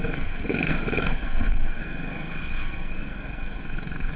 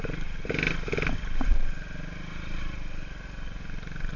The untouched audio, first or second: second